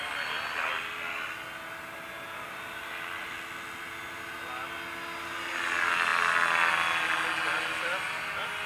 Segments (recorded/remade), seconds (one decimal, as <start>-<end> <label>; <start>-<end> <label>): 0.0-6.1 recorded; 6.1-6.7 remade; 6.7-8.7 recorded